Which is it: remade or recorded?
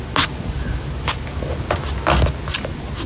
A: recorded